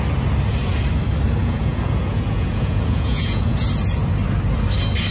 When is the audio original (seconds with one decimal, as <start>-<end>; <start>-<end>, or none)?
0.0-1.4; 3.6-5.1